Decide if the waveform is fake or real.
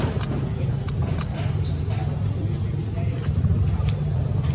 real